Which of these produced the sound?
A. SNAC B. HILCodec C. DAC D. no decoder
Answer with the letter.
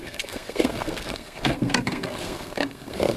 A